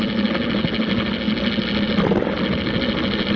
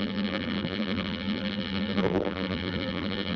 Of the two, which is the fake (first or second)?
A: second